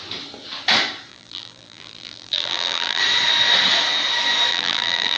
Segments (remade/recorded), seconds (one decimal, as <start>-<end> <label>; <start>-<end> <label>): 0.0-1.1 recorded; 1.1-3.0 remade; 3.0-4.5 recorded; 4.5-5.2 remade